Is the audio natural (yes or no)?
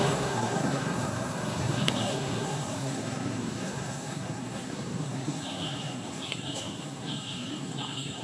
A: no